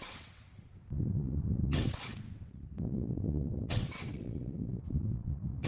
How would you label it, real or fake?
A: fake